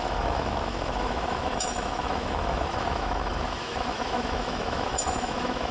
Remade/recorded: remade